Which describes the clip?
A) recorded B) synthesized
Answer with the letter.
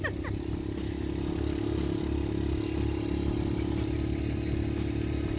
A